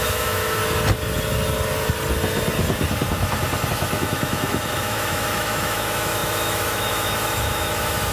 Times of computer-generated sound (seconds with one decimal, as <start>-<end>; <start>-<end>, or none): 0.0-0.6; 3.7-8.1